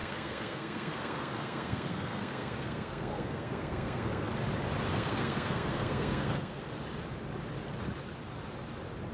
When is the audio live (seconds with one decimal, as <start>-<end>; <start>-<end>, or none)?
4.3-4.9; 6.6-9.1